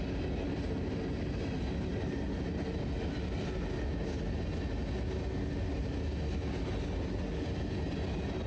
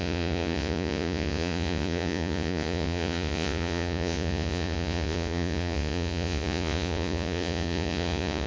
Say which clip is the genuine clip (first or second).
first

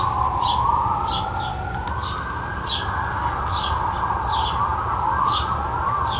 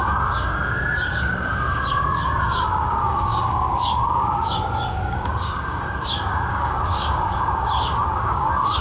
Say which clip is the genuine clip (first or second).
first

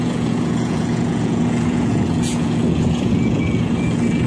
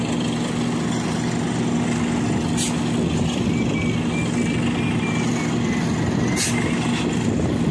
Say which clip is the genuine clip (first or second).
second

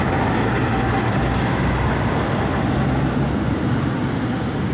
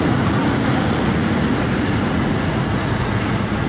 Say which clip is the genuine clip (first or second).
first